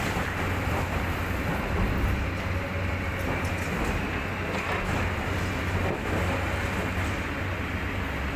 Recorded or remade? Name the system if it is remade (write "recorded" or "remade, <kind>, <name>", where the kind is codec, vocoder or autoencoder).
recorded